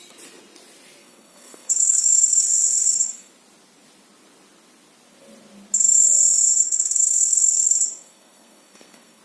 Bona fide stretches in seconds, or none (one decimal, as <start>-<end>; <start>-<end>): 0.0-1.0; 3.3-6.6